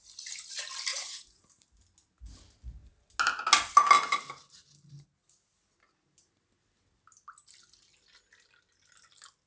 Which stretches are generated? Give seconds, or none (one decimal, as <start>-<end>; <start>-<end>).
0.9-1.4